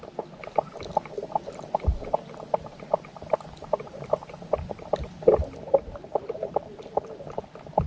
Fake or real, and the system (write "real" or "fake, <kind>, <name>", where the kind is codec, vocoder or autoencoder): real